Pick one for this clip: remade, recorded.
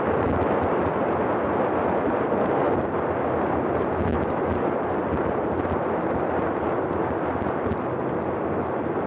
recorded